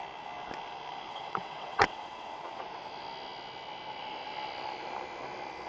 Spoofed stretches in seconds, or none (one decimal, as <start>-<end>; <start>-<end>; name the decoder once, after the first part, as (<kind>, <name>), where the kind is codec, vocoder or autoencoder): 1.1-2.6 (vocoder, WaveNeXt)

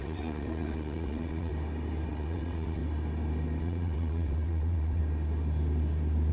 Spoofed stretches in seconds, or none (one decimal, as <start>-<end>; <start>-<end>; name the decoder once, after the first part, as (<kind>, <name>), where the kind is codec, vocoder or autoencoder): 0.0-1.5 (vocoder, WaveNeXt); 2.1-2.8; 3.6-5.0

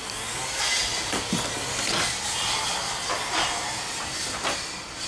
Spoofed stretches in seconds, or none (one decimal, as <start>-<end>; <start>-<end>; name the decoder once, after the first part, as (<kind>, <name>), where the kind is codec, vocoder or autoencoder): none

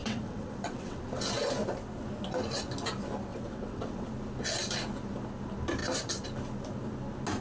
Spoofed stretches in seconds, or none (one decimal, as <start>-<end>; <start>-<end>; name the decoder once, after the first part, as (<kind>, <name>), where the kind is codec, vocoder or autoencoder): 0.0-1.0 (vocoder, WaveNeXt); 3.3-4.1

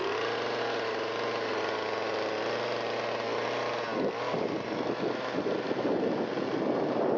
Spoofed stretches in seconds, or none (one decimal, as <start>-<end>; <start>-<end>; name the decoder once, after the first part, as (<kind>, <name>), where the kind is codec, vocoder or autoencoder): none

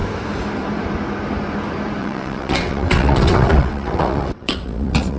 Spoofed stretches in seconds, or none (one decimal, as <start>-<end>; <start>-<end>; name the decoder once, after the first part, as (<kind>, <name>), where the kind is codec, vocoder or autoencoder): 2.0-5.2 (vocoder, WaveNeXt)

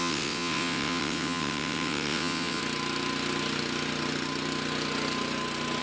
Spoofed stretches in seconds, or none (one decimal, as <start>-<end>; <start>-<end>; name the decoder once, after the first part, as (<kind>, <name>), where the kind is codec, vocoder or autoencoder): 0.0-2.6 (vocoder, WaveNeXt)